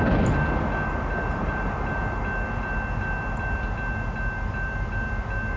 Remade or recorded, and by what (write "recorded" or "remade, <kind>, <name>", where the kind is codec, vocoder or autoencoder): recorded